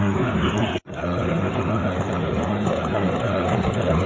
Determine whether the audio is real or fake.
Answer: fake